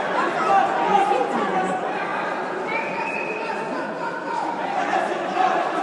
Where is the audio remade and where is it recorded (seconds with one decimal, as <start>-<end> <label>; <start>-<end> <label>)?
0.0-2.1 recorded; 2.1-5.8 remade